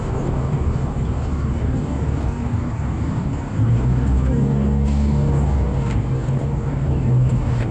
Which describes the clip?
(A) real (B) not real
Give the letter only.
B